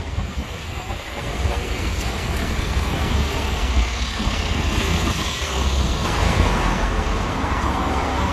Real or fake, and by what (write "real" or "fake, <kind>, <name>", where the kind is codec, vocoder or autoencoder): fake, codec, SNAC